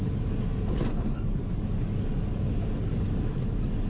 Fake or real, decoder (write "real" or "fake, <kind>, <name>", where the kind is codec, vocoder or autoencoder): real